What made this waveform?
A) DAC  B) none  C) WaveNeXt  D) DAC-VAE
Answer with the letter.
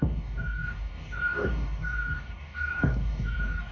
A